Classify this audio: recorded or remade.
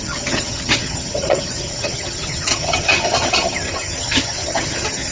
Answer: remade